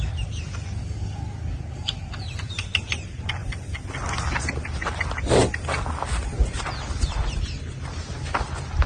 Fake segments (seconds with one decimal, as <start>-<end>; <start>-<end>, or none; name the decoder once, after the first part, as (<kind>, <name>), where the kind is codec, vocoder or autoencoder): 0.8-2.2 (codec, DAC)